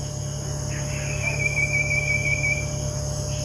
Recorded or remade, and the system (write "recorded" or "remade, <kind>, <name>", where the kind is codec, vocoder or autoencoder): recorded